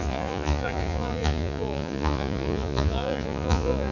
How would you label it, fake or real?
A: fake